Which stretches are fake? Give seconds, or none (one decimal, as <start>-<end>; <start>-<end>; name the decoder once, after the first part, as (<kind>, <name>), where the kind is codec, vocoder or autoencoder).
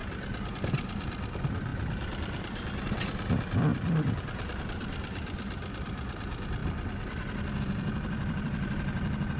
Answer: 0.5-6.6 (vocoder, BigVGAN v2); 7.6-9.4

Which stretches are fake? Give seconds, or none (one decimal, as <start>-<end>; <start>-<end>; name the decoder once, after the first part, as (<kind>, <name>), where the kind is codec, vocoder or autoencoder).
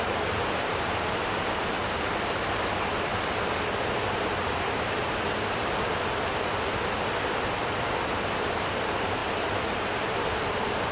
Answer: 0.0-3.1 (vocoder, BigVGAN v2); 4.0-5.0; 8.1-9.2; 10.0-10.9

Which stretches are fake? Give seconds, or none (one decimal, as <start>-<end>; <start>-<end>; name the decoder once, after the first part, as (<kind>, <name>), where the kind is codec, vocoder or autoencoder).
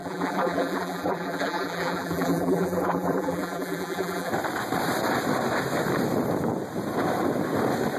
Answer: 0.0-4.3 (vocoder, BigVGAN v2)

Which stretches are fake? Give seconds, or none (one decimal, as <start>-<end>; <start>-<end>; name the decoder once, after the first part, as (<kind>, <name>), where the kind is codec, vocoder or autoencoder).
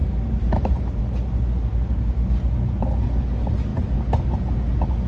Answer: 0.0-1.0 (vocoder, BigVGAN v2)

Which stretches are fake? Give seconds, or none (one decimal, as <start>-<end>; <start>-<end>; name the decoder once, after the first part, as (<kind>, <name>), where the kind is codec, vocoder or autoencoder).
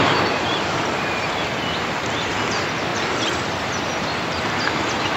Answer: 2.9-3.5 (vocoder, BigVGAN v2); 3.9-4.4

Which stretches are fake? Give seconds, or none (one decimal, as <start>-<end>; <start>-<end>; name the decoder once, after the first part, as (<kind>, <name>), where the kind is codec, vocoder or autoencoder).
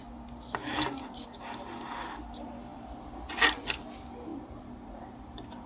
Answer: 4.3-5.7 (vocoder, BigVGAN v2)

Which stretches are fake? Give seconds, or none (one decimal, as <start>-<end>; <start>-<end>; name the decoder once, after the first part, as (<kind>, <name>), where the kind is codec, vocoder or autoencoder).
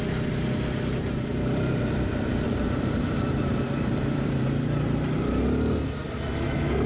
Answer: 1.3-5.4 (vocoder, BigVGAN v2)